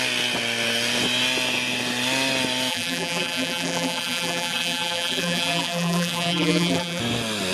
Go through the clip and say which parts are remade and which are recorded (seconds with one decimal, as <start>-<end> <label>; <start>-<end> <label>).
0.0-2.7 recorded; 2.7-7.0 remade; 7.0-7.5 recorded